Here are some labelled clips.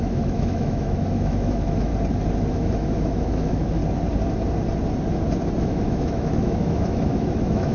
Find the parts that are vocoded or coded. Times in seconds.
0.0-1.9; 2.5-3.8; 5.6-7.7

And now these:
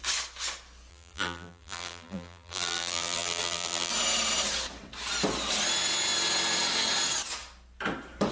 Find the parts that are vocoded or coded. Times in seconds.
0.9-3.9

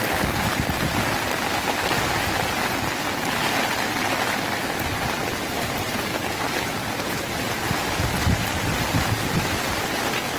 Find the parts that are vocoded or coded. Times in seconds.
5.3-6.0

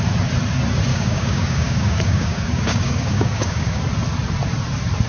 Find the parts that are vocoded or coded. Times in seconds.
0.9-3.8

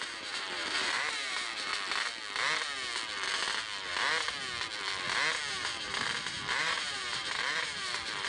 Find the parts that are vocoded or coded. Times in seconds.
0.0-1.7; 5.5-8.3

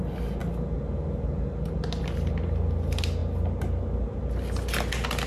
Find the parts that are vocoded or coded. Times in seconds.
none

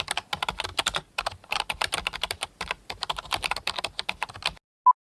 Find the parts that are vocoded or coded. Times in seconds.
0.7-3.5

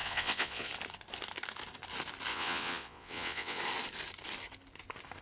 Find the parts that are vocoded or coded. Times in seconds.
0.0-0.7; 2.3-3.6